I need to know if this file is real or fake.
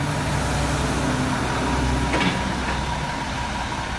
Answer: real